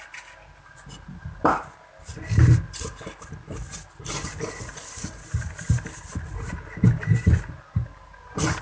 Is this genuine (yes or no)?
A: yes